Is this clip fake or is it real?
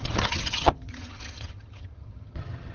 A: fake